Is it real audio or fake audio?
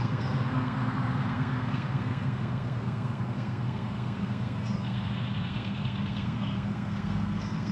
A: fake